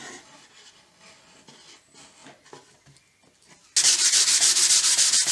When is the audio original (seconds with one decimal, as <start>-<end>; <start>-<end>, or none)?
0.0-5.3